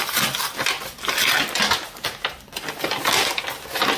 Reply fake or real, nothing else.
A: real